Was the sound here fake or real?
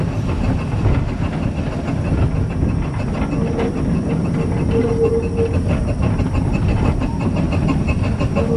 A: real